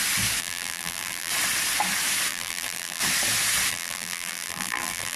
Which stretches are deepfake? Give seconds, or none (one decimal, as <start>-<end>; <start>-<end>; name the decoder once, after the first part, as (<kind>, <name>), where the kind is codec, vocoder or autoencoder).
0.4-1.3 (vocoder, BigVGAN v2); 2.3-3.0; 3.7-5.2